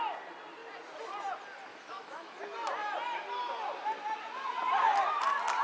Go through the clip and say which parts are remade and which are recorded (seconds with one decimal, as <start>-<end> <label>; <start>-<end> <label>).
0.0-1.7 recorded; 1.7-2.4 remade; 2.4-5.6 recorded